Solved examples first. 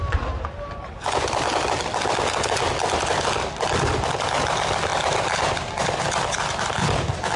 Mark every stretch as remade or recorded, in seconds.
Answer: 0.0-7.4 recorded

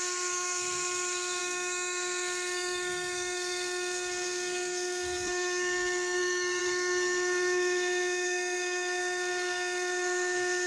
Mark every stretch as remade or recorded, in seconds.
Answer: 0.0-10.7 remade

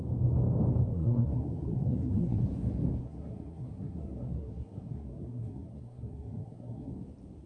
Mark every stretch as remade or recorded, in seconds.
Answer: 0.0-0.9 recorded; 0.9-2.4 remade; 2.4-3.0 recorded; 3.0-6.9 remade; 6.9-7.5 recorded

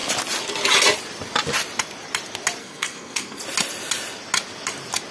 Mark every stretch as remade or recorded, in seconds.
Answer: 0.0-2.6 recorded; 2.6-3.4 remade; 3.4-5.1 recorded